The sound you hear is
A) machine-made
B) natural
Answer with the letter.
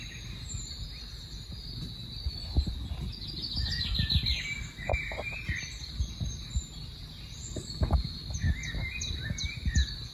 B